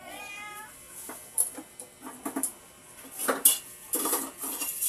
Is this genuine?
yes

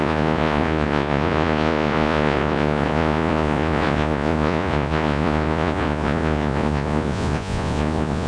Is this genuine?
no